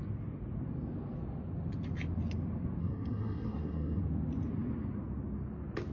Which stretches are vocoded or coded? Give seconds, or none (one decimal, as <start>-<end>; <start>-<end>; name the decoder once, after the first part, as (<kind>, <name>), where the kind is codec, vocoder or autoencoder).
2.8-4.0 (codec, SNAC)